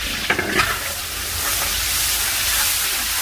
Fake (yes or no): no